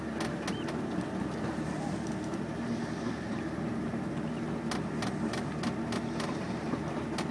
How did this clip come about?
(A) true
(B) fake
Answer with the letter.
A